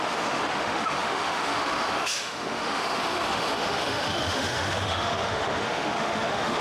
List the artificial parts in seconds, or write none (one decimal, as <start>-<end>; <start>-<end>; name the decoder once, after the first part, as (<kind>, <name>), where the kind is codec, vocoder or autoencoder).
0.0-6.6 (autoencoder, DAC-VAE)